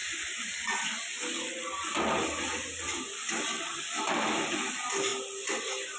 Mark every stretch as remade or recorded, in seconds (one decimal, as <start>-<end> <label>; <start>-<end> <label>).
0.0-6.0 recorded